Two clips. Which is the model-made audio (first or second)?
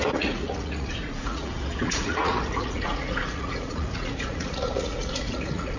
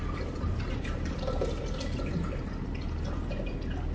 first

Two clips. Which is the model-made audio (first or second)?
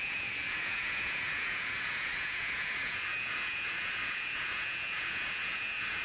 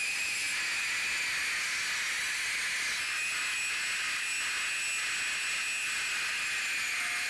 first